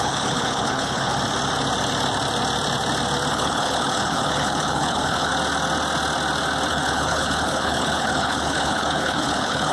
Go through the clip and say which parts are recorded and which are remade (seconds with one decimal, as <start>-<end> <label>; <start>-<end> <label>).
0.0-1.1 remade; 1.1-3.3 recorded; 3.3-5.3 remade; 5.3-6.7 recorded; 6.7-9.7 remade